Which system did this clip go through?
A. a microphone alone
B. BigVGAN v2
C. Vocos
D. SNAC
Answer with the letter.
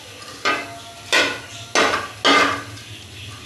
A